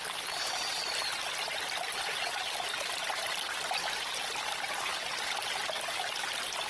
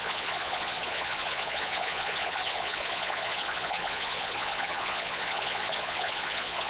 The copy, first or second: second